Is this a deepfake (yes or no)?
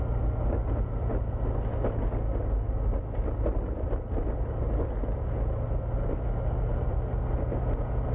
no